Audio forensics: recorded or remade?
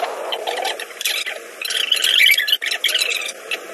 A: recorded